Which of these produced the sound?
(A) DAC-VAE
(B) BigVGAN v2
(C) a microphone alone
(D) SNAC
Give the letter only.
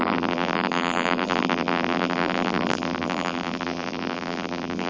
B